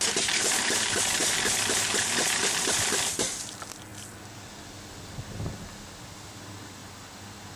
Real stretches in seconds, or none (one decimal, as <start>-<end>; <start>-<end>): 0.0-7.6